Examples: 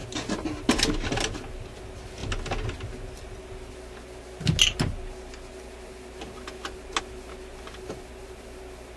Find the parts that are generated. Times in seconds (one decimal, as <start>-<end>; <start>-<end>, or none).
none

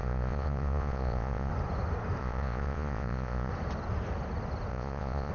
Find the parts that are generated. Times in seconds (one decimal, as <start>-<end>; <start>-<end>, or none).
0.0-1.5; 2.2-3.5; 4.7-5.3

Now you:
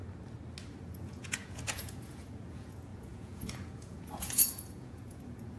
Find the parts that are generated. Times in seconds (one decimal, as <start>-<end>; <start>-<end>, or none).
0.8-5.6

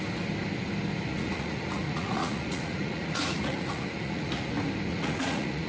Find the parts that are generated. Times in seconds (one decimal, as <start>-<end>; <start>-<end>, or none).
1.1-4.5; 4.9-5.7

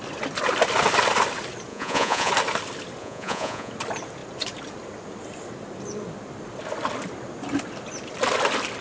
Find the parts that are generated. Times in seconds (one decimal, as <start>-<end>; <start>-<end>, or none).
1.7-2.3; 3.0-3.7

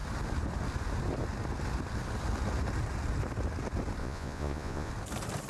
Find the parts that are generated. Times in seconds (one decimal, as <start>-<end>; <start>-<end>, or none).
4.0-4.9

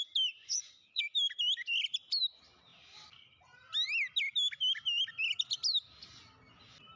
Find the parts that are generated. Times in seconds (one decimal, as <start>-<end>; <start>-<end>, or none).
0.4-1.0

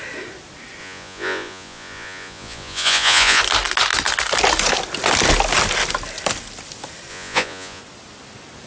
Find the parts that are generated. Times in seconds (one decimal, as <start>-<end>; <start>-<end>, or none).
0.8-3.4; 7.1-7.8